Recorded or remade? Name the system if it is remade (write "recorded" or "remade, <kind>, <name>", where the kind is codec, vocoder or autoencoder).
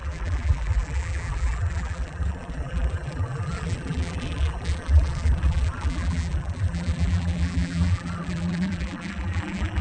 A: remade, vocoder, BigVGAN v2